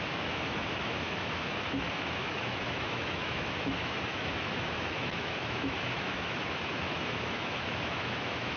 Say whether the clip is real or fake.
fake